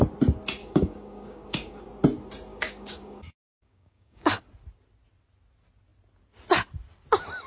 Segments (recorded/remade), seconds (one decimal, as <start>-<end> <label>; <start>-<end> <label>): 0.0-0.6 recorded; 0.6-1.8 remade; 1.8-2.5 recorded; 2.5-4.4 remade; 4.4-7.5 recorded